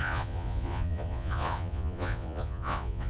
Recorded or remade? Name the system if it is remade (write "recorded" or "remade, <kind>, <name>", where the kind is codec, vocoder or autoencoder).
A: remade, vocoder, Vocos